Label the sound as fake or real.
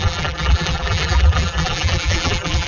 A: fake